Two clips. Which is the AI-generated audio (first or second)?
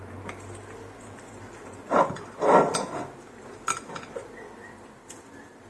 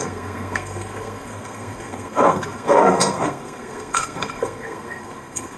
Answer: second